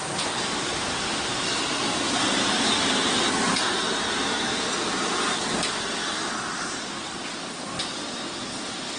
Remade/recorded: recorded